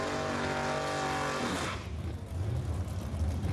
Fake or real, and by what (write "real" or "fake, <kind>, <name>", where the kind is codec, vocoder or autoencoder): real